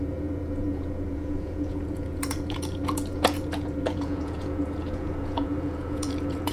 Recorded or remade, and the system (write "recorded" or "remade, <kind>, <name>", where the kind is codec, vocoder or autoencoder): remade, vocoder, Vocos